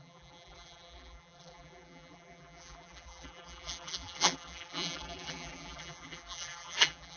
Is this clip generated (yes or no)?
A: yes